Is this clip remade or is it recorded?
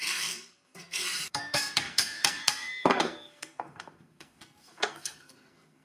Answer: remade